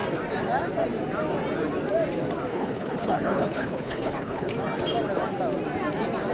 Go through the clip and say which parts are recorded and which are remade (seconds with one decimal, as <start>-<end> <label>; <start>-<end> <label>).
0.0-2.5 recorded; 2.5-4.5 remade; 4.5-6.3 recorded